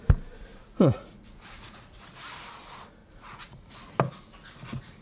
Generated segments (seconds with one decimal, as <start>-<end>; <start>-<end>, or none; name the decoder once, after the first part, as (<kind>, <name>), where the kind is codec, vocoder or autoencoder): 0.5-2.0 (vocoder, Vocos); 3.0-3.7